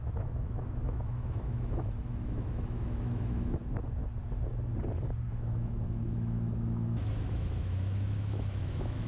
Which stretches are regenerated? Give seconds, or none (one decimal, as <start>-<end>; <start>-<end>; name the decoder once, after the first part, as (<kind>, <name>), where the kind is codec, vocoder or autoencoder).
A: 0.0-3.6 (autoencoder, DAC-VAE); 5.3-9.1